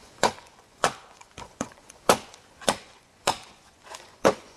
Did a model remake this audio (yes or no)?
yes